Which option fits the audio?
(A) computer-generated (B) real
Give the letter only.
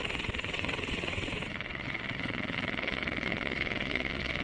A